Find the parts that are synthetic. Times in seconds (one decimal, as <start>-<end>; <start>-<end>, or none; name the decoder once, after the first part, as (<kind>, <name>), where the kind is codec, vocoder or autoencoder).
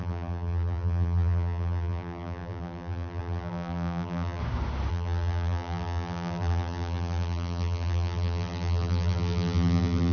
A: 0.0-4.4 (vocoder, BigVGAN v2); 4.9-10.1